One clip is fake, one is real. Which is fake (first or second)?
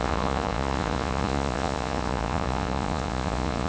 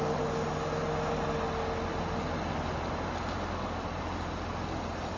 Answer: first